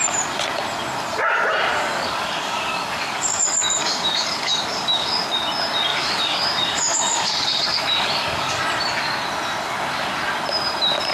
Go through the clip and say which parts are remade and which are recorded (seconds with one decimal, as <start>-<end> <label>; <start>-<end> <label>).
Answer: 0.0-1.7 recorded; 1.7-5.3 remade; 5.3-5.9 recorded; 5.9-8.6 remade; 8.6-11.1 recorded